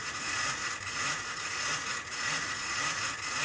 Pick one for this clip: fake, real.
fake